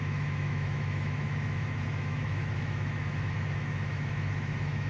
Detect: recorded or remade remade